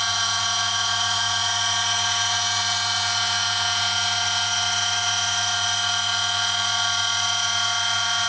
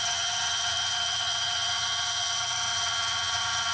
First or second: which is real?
first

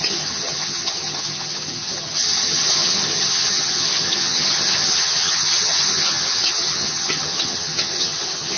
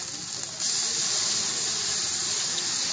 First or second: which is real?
second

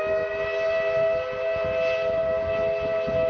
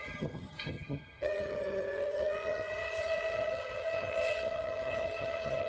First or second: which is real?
first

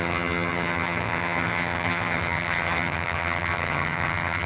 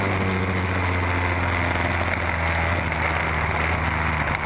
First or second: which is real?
second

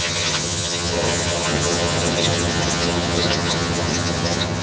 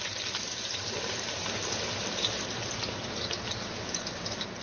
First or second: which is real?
second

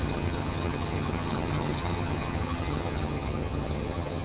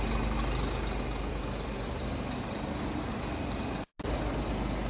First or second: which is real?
second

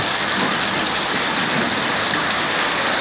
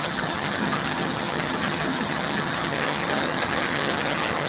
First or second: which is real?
first